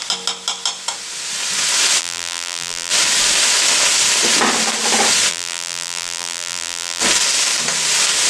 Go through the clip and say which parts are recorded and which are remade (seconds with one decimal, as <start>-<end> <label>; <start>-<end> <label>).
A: 0.0-2.0 recorded; 2.0-2.9 remade; 2.9-5.3 recorded; 5.3-7.0 remade; 7.0-8.3 recorded